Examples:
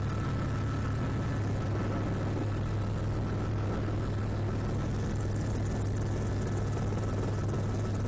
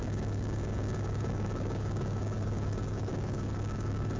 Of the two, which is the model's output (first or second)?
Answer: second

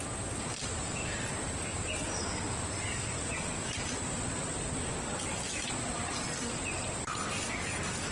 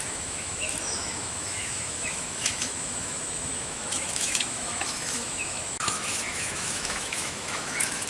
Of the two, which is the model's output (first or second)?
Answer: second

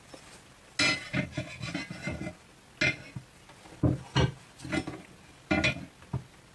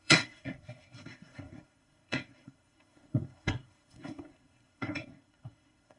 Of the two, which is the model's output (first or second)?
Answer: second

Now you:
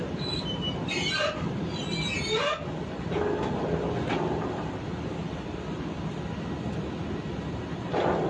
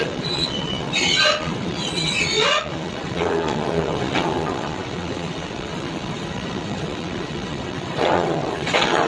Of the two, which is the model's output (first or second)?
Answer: second